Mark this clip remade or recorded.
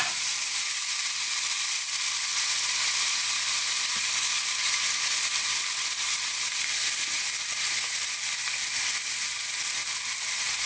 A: recorded